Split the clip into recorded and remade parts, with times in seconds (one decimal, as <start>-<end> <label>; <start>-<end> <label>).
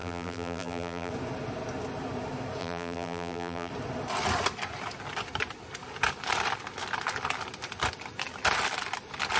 0.0-1.1 remade; 1.1-2.6 recorded; 2.6-3.7 remade; 3.7-9.4 recorded